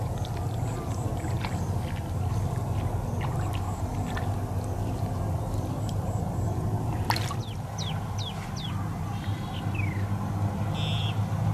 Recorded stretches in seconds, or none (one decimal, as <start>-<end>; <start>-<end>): 0.0-11.5